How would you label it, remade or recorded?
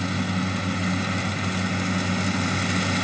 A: recorded